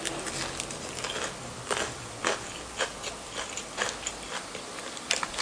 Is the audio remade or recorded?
recorded